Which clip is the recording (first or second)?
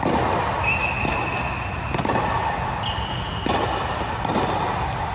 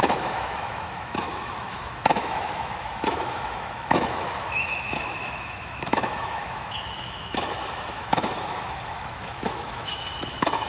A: first